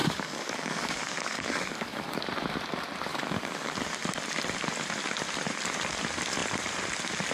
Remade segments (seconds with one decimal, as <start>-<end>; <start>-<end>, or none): 0.0-2.2; 3.1-3.7